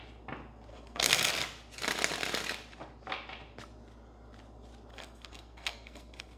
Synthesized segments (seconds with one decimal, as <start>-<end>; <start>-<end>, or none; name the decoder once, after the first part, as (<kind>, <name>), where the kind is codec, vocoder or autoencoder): 0.7-1.3 (codec, SNAC); 4.9-6.4